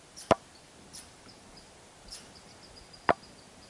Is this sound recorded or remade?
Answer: recorded